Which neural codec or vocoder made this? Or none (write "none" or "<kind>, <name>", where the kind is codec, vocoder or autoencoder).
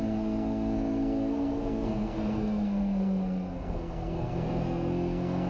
codec, SNAC